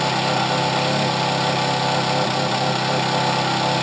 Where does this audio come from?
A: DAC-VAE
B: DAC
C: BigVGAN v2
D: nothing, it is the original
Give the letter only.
D